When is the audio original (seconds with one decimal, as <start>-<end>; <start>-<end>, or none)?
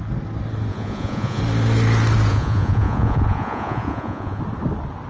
0.0-0.7; 1.4-2.3; 4.4-5.1